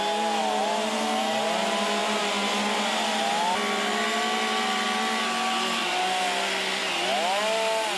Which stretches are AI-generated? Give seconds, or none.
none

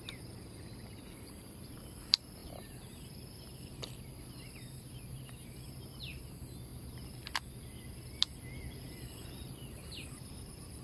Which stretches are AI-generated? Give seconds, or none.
0.0-6.7 (vocoder, BigVGAN v2); 8.8-10.8

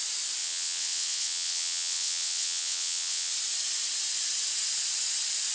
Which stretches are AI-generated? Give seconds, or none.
0.4-3.3 (vocoder, WaveNeXt)